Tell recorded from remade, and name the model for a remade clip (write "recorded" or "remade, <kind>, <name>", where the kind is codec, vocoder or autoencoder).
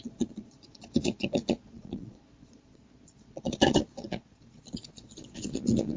remade, vocoder, Vocos